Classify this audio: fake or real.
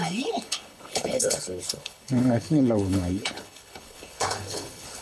fake